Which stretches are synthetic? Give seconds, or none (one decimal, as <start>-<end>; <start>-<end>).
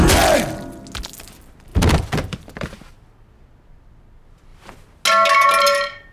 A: 1.7-2.9